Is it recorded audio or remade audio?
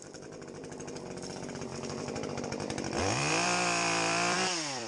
remade